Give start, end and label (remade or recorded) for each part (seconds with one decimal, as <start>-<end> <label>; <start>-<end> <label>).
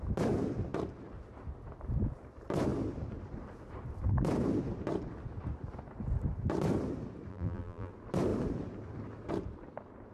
0.0-7.3 recorded; 7.3-7.9 remade; 7.9-10.1 recorded